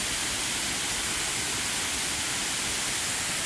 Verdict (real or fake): real